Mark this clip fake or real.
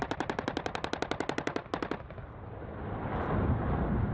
real